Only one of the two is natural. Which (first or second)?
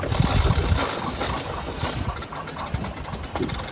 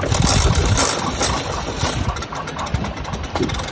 first